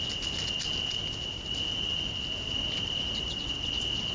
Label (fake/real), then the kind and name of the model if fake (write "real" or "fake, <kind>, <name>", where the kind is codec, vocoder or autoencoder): real